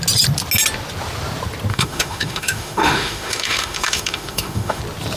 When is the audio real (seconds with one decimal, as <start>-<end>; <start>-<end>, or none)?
0.0-1.7; 4.8-5.2